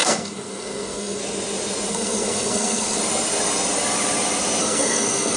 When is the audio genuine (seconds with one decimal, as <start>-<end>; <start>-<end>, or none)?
1.2-1.9; 3.0-4.6